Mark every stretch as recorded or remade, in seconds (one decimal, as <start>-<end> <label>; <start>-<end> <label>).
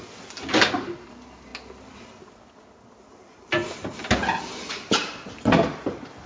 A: 0.0-6.3 recorded